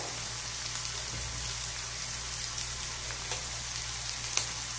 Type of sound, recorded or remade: recorded